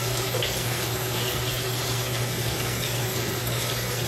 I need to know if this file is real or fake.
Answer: fake